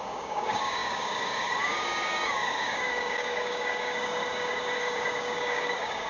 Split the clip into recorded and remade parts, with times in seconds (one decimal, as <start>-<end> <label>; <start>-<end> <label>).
0.0-6.1 remade